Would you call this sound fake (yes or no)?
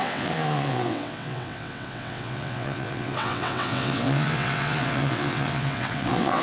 yes